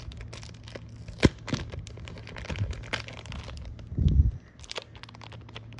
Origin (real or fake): real